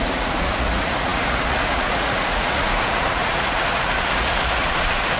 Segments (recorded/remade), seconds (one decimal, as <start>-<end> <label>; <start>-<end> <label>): 0.0-5.2 remade